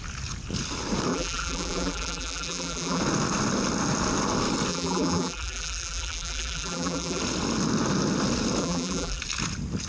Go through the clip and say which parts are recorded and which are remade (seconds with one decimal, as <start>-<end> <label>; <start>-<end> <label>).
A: 0.0-1.1 recorded; 1.1-3.0 remade; 3.0-4.7 recorded; 4.7-7.2 remade; 7.2-8.6 recorded; 8.6-9.2 remade; 9.2-9.9 recorded